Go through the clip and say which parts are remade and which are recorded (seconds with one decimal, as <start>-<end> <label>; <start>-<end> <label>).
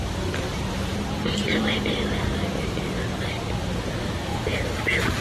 0.0-3.1 remade; 3.1-5.2 recorded